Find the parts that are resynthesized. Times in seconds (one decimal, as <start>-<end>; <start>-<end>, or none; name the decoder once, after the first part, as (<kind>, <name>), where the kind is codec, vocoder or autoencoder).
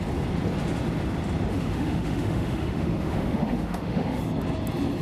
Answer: 1.5-4.2 (autoencoder, DAC-VAE)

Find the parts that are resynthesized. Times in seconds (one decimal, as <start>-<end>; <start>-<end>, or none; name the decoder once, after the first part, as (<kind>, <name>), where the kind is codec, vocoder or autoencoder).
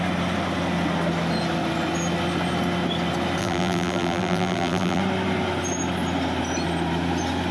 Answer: 3.4-5.0 (vocoder, BigVGAN v2)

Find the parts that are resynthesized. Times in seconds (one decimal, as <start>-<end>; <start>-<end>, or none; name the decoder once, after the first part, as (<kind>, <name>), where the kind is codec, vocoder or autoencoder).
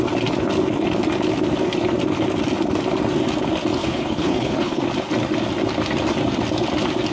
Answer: 3.8-4.8 (codec, HILCodec)